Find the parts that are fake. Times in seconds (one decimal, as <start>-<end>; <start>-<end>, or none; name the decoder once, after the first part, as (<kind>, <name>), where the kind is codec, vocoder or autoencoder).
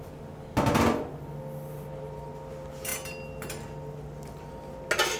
none